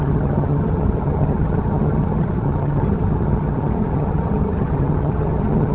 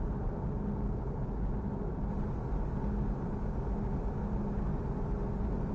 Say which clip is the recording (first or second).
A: second